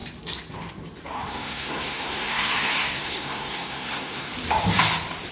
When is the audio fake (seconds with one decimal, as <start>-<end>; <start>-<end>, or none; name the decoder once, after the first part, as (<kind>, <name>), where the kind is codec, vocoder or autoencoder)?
1.1-4.3 (codec, SNAC)